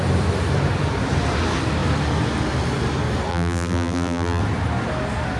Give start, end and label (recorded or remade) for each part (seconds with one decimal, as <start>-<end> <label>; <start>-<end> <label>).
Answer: 0.0-3.3 recorded; 3.3-4.4 remade; 4.4-5.4 recorded